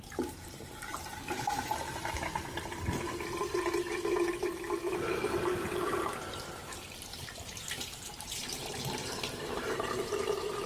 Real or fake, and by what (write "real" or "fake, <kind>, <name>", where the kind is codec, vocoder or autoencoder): fake, vocoder, BigVGAN v2